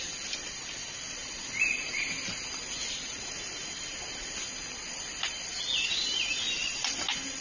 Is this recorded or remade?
recorded